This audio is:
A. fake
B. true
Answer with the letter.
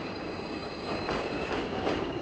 A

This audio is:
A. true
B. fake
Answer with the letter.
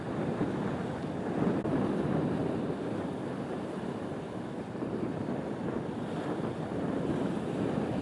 A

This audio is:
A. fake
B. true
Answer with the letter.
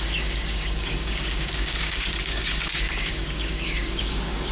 A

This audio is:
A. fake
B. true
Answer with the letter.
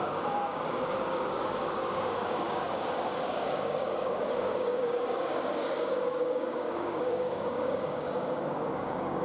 A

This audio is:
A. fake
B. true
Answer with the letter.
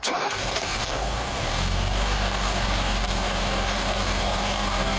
A